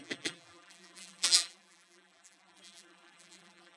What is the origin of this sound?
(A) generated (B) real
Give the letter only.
A